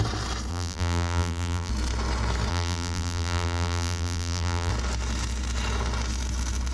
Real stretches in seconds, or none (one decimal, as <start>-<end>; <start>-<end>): 0.0-0.5; 1.7-2.5; 4.7-6.7